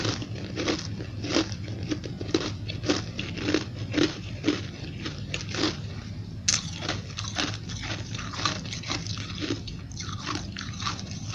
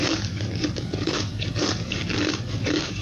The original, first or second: first